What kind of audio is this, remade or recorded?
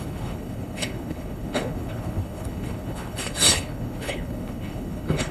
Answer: remade